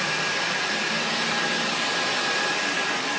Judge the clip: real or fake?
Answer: real